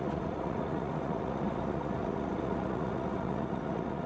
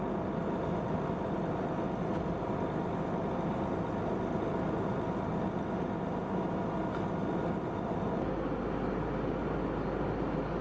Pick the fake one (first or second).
first